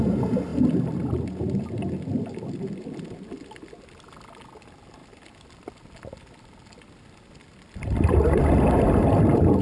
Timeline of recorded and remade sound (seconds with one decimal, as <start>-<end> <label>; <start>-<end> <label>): 0.0-9.6 recorded